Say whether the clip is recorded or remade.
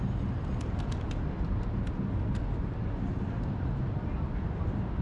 recorded